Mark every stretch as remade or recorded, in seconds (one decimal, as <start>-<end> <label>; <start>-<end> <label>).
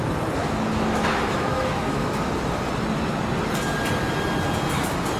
0.0-0.4 recorded; 0.4-2.3 remade; 2.3-5.2 recorded